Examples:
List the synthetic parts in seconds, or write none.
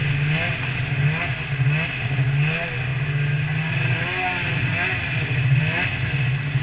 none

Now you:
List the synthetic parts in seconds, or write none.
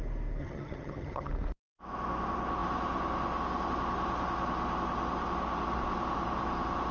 0.4-1.3 (vocoder, HiFi-GAN)